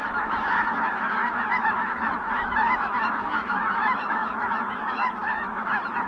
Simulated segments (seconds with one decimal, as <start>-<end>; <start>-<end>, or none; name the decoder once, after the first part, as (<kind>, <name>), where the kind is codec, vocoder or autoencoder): 0.0-6.1 (autoencoder, DAC-VAE)